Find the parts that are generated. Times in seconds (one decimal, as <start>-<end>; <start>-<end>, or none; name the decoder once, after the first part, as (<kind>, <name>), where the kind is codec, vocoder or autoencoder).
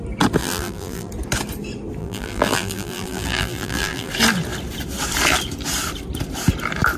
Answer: 0.4-1.1 (vocoder, BigVGAN v2); 2.0-4.1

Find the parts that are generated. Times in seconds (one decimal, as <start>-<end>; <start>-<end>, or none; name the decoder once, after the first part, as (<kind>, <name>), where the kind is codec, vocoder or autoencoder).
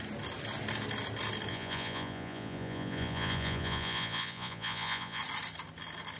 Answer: 1.5-5.2 (vocoder, Vocos)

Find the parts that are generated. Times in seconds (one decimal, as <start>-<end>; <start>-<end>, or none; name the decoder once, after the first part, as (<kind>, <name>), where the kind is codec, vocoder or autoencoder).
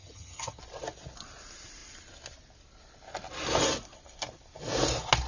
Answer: 0.0-0.6 (vocoder, HiFi-GAN)